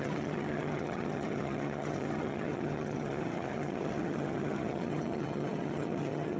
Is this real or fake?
fake